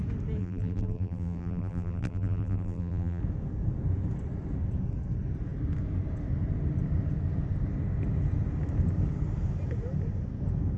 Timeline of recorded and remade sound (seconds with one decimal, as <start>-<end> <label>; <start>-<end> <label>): 0.0-0.4 recorded; 0.4-3.2 remade; 3.2-10.8 recorded